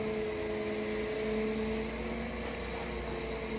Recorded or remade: recorded